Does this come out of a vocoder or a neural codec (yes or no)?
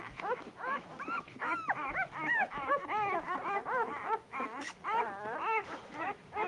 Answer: yes